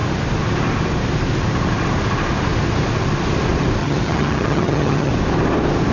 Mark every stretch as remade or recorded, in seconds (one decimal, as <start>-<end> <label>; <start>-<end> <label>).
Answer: 0.0-3.8 recorded; 3.8-5.1 remade; 5.1-5.9 recorded